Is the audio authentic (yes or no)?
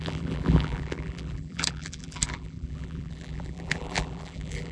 no